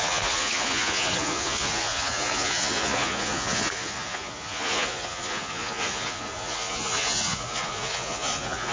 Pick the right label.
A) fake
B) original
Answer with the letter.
A